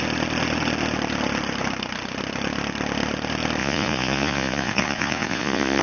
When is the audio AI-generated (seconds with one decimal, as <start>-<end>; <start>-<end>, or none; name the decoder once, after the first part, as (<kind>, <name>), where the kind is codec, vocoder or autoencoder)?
3.6-5.8 (vocoder, Vocos)